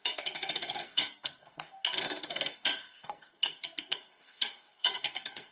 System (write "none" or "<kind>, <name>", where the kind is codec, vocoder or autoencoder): codec, SNAC